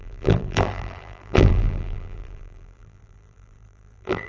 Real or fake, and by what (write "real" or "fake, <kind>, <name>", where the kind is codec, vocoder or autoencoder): fake, vocoder, BigVGAN v2